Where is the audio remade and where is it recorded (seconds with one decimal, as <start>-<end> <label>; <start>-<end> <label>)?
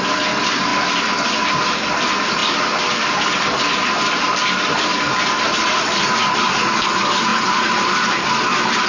0.0-8.9 recorded